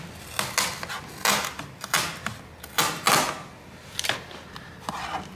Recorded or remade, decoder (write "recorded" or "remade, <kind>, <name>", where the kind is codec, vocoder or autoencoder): recorded